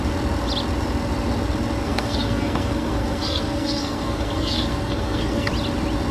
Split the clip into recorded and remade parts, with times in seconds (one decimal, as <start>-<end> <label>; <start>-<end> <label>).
0.0-1.8 recorded; 1.8-5.5 remade; 5.5-6.1 recorded